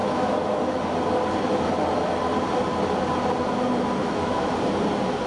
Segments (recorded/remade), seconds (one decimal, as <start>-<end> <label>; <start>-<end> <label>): 0.0-0.8 remade; 0.8-4.0 recorded; 4.0-4.5 remade; 4.5-5.3 recorded